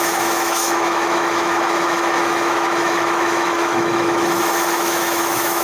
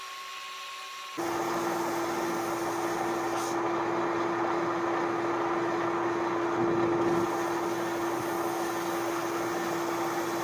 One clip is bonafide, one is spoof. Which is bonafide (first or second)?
second